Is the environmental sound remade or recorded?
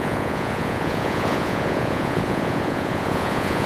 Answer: remade